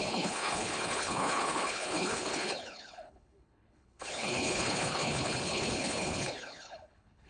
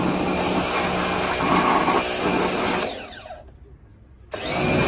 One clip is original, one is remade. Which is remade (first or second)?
first